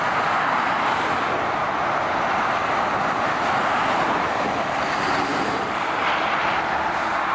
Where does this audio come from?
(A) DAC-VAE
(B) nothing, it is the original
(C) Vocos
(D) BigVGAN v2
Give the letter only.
B